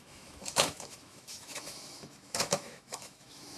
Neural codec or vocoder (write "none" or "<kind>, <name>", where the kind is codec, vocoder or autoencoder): autoencoder, DAC-VAE